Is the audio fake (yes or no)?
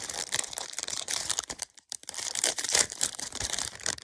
yes